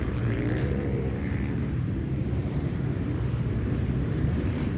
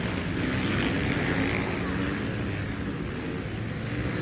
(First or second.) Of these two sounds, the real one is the second